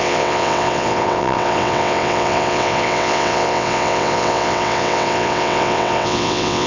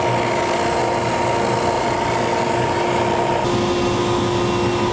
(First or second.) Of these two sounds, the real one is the second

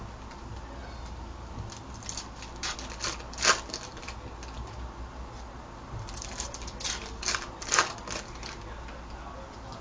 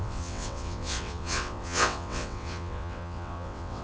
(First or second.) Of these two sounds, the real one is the first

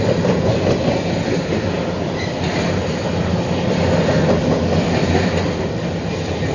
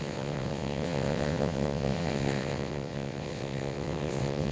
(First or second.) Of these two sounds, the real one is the first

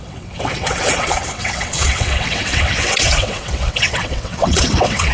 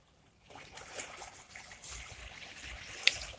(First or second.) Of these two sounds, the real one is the second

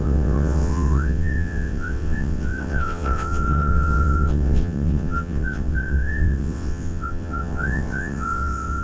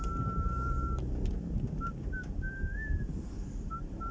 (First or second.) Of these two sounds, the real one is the second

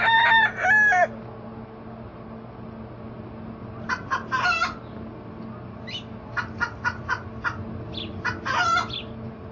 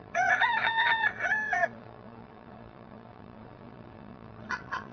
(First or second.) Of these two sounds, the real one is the first